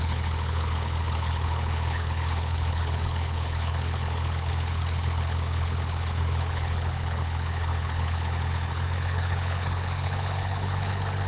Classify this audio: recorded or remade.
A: remade